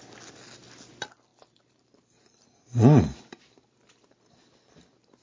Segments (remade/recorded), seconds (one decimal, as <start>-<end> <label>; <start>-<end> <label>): 0.0-1.3 recorded; 1.3-3.9 remade; 3.9-5.2 recorded